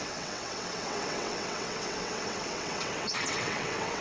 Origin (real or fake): fake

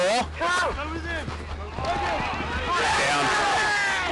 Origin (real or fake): real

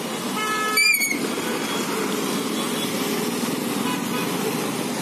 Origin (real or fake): real